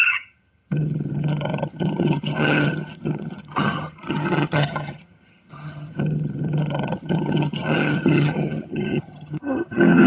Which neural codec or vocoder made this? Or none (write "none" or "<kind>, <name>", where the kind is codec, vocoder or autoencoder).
vocoder, HiFi-GAN